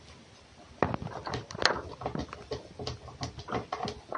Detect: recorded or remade recorded